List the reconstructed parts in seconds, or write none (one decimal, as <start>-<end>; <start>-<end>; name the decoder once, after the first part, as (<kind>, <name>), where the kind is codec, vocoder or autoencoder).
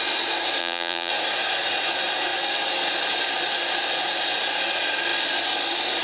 0.6-1.1 (vocoder, BigVGAN v2)